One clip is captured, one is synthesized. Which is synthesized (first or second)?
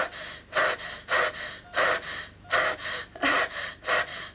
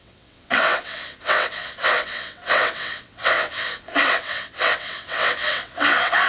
second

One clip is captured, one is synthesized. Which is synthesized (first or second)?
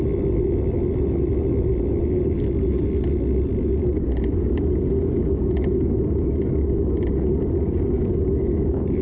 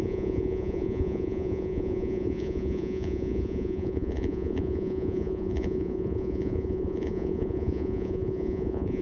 second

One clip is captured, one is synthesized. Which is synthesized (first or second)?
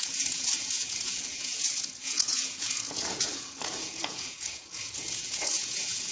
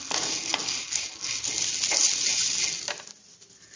first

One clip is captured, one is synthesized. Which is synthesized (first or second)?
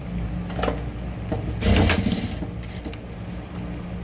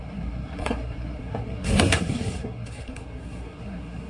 second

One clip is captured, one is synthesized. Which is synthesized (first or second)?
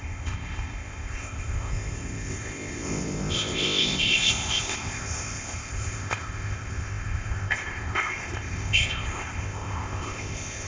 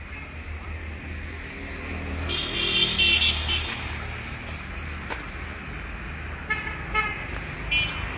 first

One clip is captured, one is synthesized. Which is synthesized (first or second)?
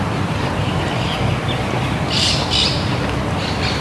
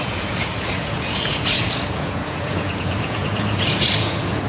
second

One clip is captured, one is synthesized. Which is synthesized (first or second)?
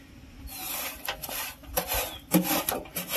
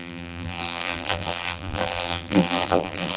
second